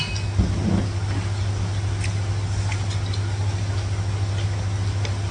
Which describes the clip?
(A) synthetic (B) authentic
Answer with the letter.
B